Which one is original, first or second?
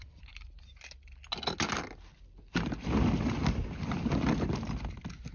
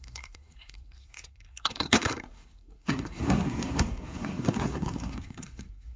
first